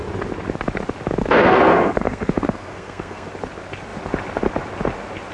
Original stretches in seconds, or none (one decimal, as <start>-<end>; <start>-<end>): 0.0-1.2; 3.3-5.3